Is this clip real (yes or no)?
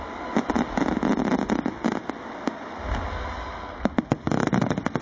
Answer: yes